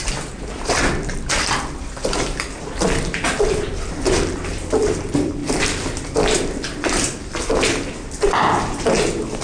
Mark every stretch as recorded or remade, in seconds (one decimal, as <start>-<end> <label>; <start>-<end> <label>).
0.0-9.4 remade